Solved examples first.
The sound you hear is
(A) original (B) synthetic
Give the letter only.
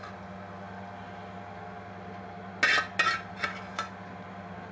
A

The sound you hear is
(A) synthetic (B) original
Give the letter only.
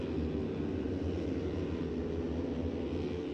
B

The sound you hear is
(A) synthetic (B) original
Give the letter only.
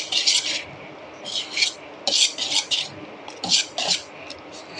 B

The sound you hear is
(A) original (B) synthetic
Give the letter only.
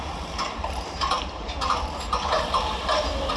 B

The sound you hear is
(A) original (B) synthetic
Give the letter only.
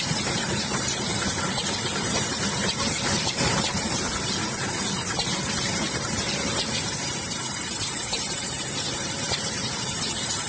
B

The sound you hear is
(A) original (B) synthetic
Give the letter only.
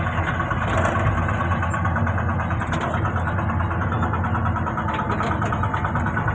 A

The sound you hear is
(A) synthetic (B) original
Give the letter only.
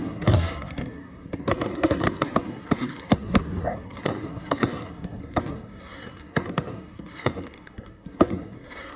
A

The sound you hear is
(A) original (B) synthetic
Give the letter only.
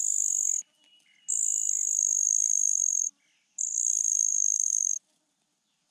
A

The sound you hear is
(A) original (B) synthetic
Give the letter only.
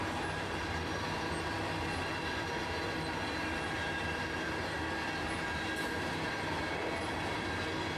A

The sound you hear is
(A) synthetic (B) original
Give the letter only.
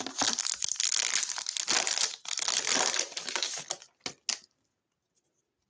B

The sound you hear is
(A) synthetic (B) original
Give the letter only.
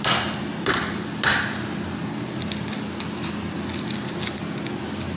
B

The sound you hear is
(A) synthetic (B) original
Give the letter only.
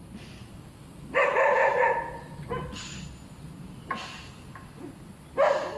B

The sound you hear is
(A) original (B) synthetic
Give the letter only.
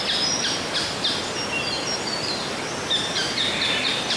A